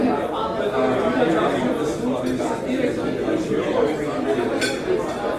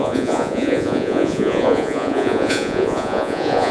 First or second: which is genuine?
first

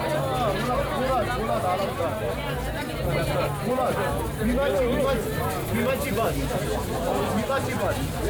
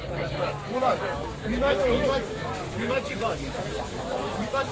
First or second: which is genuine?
first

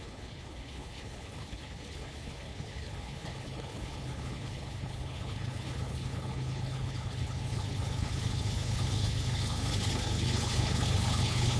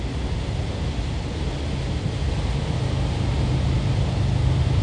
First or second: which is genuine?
second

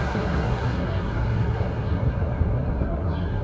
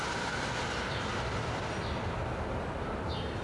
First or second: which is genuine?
second